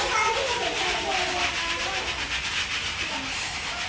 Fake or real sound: real